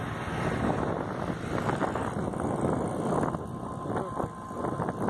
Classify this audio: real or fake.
real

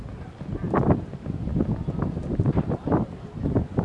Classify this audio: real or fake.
real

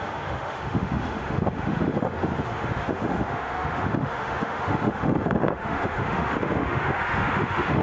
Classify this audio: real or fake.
fake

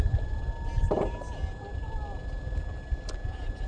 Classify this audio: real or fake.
real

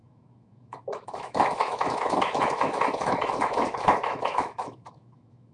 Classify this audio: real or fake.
fake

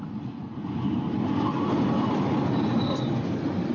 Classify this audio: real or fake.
real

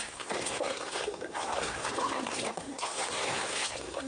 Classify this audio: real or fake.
fake